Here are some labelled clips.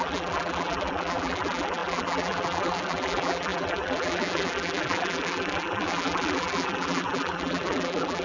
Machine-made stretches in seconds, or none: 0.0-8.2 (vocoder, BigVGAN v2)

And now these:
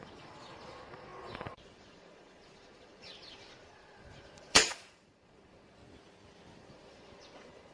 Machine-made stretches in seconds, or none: 0.0-5.8 (vocoder, Vocos); 6.6-7.7

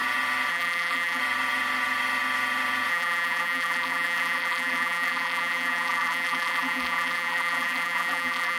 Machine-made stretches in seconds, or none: 0.5-1.2 (vocoder, BigVGAN v2); 2.9-8.6

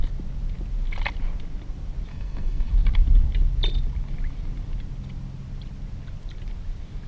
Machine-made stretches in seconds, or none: 2.1-2.7 (codec, SNAC)